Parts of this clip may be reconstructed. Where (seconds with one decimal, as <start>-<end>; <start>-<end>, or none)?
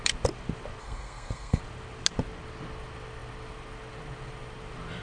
0.8-1.6